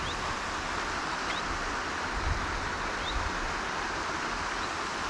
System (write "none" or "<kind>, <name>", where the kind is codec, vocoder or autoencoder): none